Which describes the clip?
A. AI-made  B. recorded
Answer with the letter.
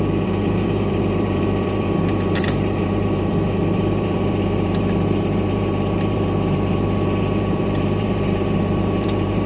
A